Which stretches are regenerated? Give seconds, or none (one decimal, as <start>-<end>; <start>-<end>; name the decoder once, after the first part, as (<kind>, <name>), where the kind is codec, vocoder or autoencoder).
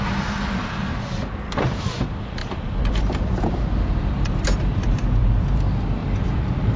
0.0-0.9 (vocoder, BigVGAN v2); 1.5-6.8